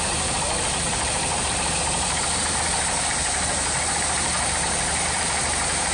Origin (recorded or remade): remade